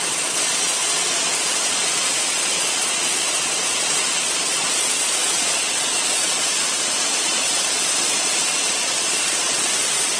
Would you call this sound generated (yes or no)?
yes